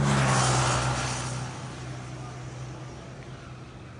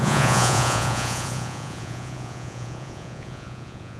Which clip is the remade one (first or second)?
second